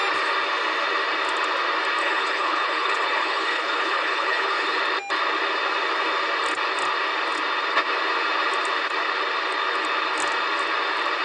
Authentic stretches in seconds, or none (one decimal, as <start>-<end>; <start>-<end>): 0.0-2.0; 4.8-11.2